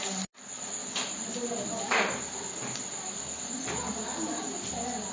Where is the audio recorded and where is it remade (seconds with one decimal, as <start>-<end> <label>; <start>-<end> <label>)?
0.0-5.1 recorded